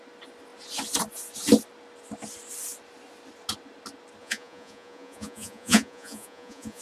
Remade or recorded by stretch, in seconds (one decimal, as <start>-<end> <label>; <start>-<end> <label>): 0.0-4.2 recorded; 4.2-6.8 remade